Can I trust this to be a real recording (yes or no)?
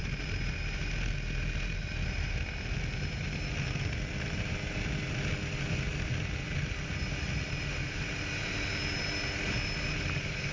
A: yes